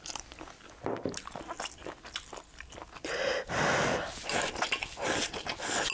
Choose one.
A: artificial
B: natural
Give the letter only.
B